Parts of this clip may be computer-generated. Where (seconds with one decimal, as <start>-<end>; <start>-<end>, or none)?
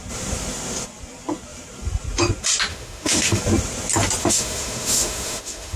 2.7-3.4; 4.2-5.8